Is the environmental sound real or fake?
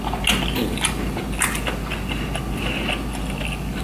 real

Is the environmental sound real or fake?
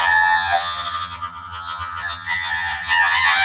fake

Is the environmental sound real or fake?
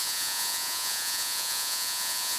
fake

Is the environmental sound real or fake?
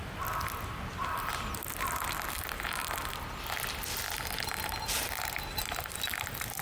real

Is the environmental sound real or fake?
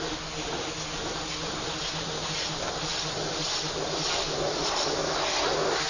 real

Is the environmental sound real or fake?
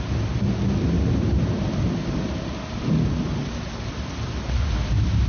real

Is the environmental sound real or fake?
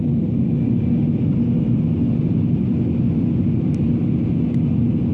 real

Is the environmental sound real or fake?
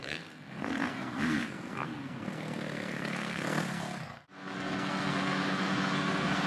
fake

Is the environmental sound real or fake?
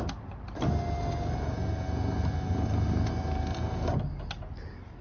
real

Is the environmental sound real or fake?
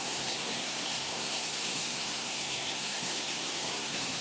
fake